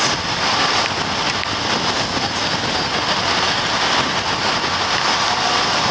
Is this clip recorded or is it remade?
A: recorded